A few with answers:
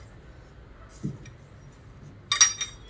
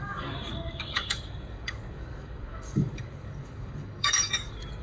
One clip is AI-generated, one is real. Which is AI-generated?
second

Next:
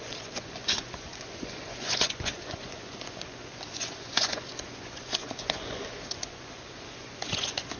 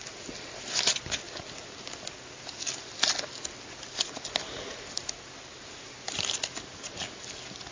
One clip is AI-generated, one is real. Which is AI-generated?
first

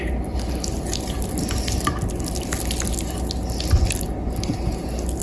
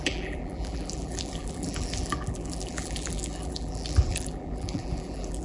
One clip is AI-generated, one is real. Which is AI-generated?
second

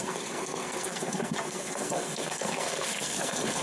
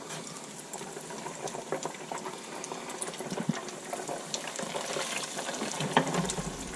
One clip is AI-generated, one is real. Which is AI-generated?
first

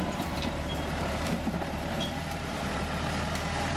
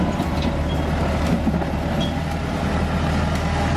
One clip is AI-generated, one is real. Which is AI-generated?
first